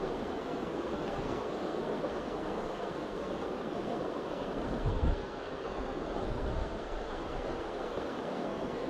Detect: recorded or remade remade